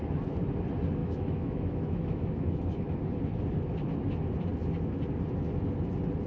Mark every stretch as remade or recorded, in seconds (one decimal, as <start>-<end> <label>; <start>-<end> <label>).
0.0-1.0 recorded; 1.0-2.6 remade; 2.6-6.3 recorded

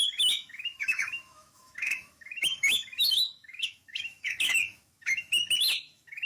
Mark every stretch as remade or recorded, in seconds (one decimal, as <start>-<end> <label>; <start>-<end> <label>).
0.0-6.3 remade

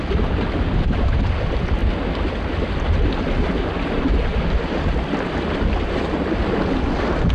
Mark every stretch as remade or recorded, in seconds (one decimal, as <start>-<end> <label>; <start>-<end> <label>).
0.0-7.3 recorded

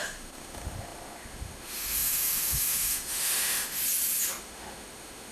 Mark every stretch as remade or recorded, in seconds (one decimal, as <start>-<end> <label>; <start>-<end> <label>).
0.0-3.8 remade; 3.8-4.4 recorded; 4.4-5.3 remade